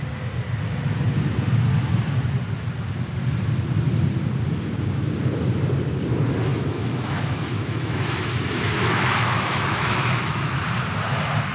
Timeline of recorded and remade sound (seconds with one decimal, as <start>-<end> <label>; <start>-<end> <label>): 0.0-6.5 recorded; 6.5-10.5 remade; 10.5-11.5 recorded